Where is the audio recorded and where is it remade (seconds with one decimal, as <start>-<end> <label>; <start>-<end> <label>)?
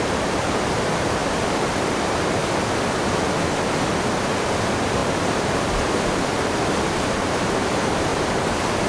0.0-2.4 remade; 2.4-4.3 recorded; 4.3-8.1 remade; 8.1-8.9 recorded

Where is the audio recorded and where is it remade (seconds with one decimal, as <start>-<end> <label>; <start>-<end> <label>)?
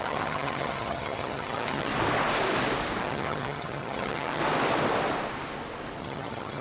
0.0-1.9 remade; 1.9-3.0 recorded; 3.0-4.4 remade; 4.4-6.0 recorded; 6.0-6.6 remade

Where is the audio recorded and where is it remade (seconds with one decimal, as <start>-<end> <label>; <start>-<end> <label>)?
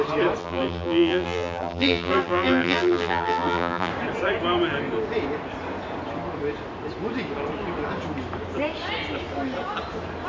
0.0-0.4 recorded; 0.4-3.9 remade; 3.9-10.3 recorded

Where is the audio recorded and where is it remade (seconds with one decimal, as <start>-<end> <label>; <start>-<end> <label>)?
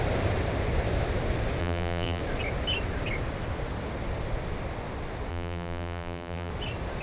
0.0-1.6 recorded; 1.6-2.2 remade; 2.2-5.3 recorded; 5.3-6.5 remade; 6.5-7.0 recorded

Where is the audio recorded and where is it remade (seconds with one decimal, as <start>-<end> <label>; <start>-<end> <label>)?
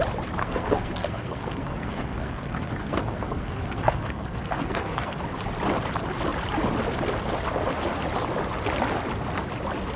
0.0-0.4 recorded; 0.4-5.2 remade; 5.2-10.0 recorded